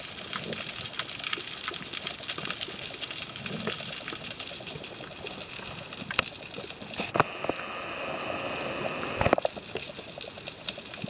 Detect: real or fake real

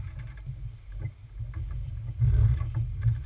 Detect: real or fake real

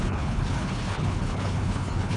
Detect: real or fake fake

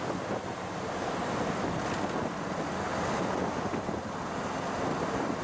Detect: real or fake real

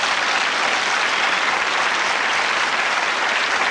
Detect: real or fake real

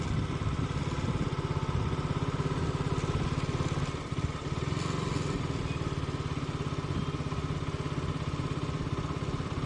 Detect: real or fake real